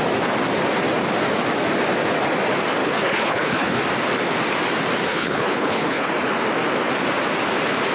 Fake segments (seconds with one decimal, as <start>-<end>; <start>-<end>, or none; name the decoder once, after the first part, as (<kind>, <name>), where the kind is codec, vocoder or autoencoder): 2.8-3.8 (codec, HILCodec); 5.1-6.1

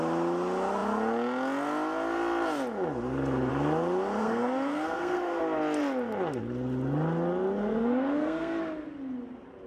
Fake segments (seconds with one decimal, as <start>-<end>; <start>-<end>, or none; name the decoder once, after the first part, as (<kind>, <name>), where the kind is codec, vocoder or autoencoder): 4.2-5.4 (codec, SNAC); 7.6-8.6

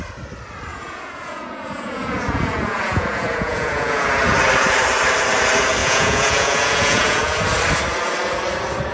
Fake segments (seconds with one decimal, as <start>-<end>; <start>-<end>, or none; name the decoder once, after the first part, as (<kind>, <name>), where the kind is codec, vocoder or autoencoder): 0.7-4.1 (vocoder, Vocos); 5.8-7.4